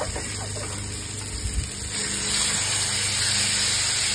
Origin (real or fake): real